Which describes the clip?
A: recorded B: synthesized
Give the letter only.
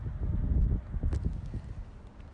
A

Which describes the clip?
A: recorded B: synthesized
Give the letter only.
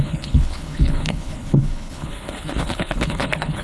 B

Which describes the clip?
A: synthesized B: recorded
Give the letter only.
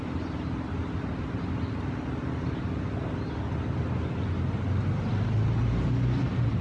B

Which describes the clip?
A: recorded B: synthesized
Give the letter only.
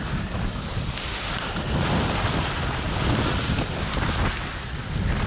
A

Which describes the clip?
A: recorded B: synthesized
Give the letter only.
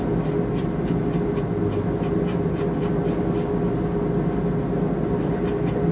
A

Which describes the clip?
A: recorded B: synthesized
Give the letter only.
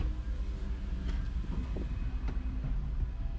A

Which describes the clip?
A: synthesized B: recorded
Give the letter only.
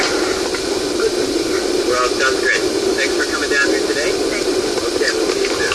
B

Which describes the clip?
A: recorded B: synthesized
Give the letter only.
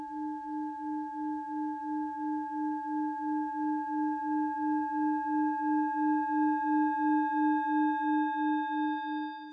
A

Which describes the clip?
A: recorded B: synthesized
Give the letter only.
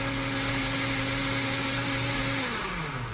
A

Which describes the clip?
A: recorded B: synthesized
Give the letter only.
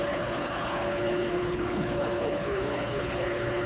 B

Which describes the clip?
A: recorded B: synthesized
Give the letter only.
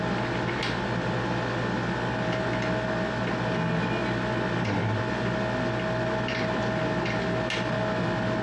A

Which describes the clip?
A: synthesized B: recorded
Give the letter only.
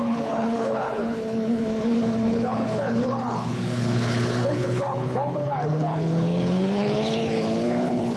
A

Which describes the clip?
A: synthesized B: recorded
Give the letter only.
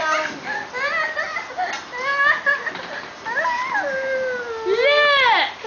B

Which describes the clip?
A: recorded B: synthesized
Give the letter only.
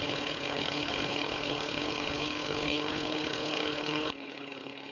B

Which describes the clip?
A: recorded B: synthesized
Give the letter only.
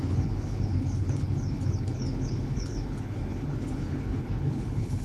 B